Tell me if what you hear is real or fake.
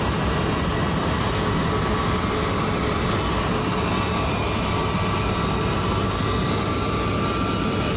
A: real